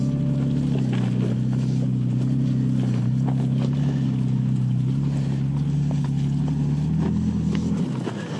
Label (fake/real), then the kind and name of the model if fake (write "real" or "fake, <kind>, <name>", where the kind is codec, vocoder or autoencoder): real